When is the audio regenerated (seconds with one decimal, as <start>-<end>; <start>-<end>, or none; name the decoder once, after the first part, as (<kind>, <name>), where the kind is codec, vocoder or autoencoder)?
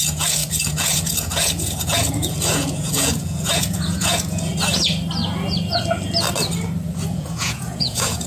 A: 0.0-4.5 (vocoder, Vocos); 7.1-8.3